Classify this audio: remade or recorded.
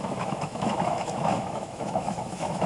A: remade